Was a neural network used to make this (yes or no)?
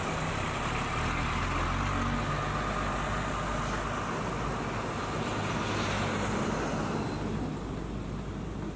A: no